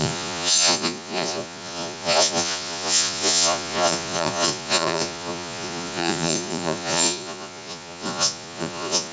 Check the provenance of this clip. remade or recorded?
remade